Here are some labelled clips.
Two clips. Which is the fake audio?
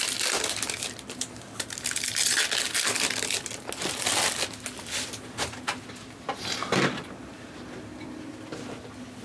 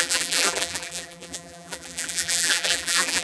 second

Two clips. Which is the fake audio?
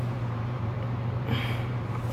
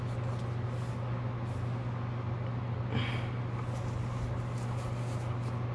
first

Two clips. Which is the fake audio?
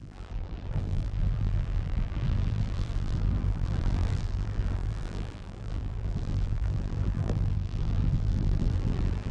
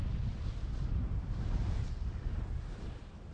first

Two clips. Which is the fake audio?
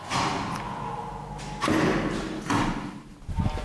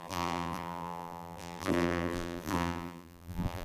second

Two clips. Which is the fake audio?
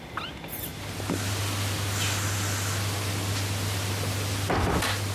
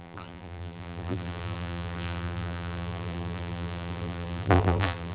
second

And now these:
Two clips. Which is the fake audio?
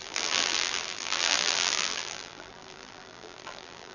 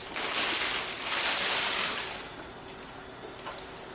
first